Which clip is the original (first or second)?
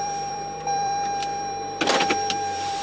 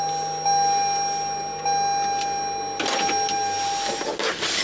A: second